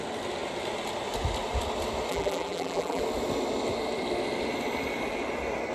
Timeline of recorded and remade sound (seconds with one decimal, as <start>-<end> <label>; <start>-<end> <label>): 0.0-2.1 recorded; 2.1-3.0 remade; 3.0-5.7 recorded